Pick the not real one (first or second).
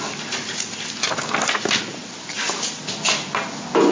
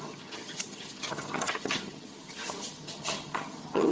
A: second